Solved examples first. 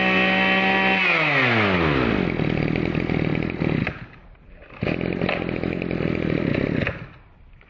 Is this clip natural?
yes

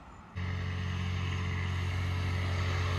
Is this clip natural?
yes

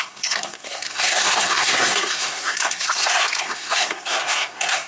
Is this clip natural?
no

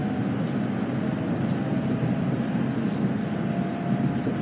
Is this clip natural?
yes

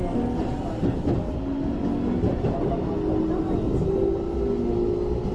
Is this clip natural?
yes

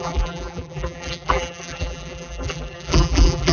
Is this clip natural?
no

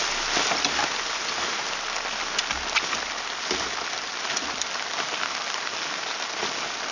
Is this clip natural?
yes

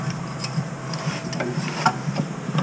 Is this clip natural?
no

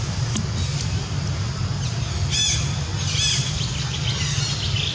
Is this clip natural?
yes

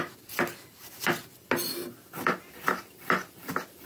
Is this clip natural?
yes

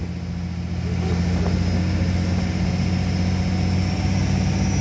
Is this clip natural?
yes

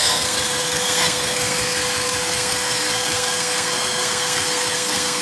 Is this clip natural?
no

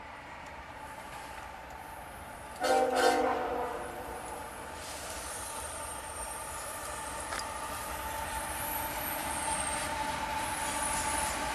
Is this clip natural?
no